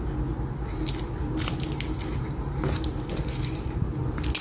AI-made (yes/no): no